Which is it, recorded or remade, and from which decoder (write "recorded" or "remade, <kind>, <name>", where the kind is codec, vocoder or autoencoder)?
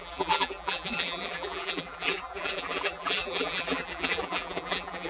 remade, vocoder, BigVGAN v2